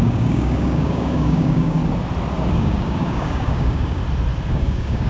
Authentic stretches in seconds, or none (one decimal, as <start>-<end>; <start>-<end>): 1.8-2.5; 4.0-4.5